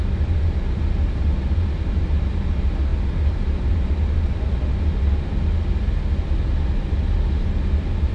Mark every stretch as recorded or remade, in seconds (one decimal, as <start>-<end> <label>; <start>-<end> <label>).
0.0-8.1 recorded